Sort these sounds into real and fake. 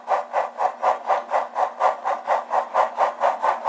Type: real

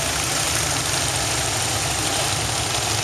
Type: real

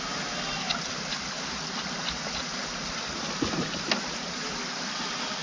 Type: real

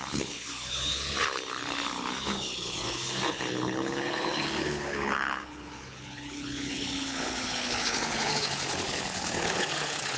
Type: fake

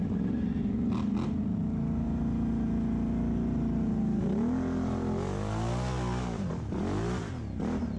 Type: real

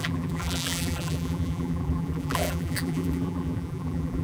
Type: fake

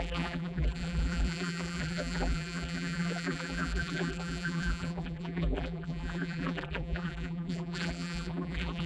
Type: fake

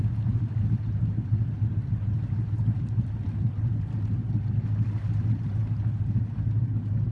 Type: real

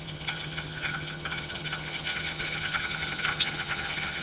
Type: fake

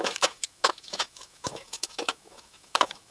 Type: fake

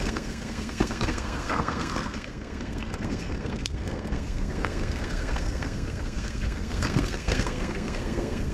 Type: fake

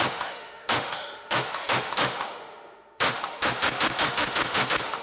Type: fake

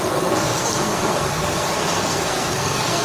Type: fake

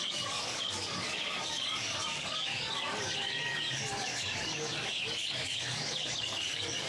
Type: fake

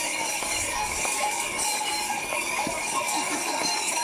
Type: fake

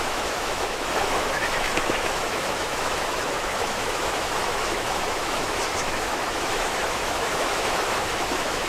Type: fake